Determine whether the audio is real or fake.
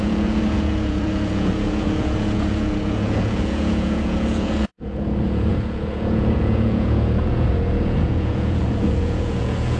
fake